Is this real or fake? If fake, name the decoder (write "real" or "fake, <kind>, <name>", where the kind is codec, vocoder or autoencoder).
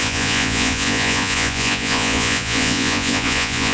fake, vocoder, Vocos